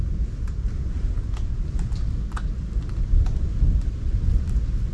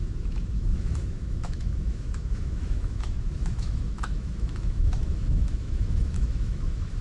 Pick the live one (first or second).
first